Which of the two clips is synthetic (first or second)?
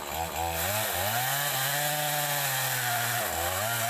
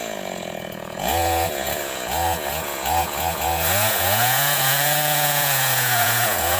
second